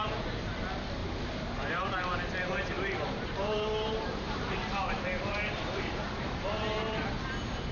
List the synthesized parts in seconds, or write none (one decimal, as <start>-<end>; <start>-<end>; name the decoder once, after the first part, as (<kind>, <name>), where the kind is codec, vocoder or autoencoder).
1.0-1.9 (vocoder, BigVGAN v2); 2.5-7.0